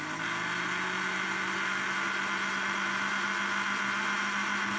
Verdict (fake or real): real